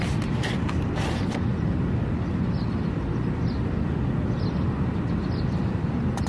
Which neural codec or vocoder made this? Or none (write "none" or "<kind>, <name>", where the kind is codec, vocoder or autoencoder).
none